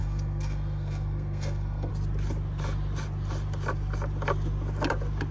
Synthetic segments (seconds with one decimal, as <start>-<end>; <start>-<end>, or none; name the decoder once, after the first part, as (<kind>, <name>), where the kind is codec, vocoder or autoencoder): 0.0-1.9 (codec, SNAC)